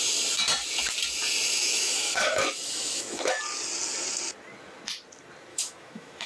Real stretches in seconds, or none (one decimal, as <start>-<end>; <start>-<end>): 0.0-1.6; 3.4-5.5